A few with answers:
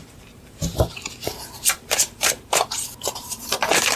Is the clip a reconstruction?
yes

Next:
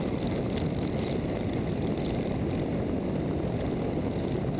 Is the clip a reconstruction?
no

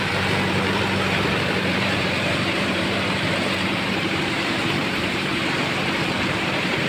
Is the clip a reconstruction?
yes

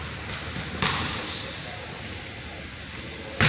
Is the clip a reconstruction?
no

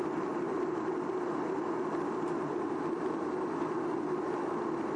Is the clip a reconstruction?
yes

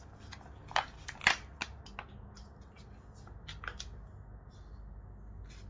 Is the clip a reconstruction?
no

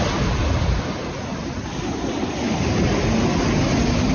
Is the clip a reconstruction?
no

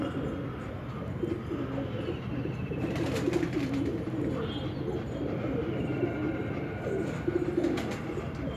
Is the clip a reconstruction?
no